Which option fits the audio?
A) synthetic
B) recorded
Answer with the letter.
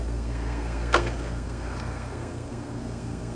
A